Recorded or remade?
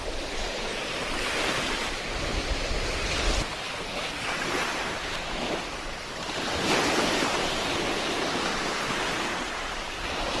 remade